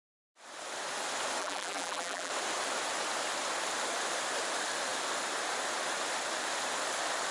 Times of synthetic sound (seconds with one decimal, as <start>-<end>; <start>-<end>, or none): 1.4-2.3